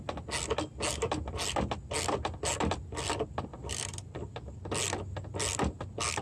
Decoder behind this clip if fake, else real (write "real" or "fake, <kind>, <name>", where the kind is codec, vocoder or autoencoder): real